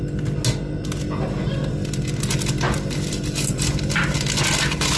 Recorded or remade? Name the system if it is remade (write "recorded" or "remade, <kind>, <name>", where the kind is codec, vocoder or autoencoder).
recorded